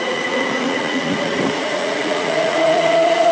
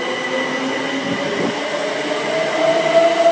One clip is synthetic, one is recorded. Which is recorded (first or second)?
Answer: second